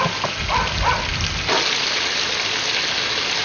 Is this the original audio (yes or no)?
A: yes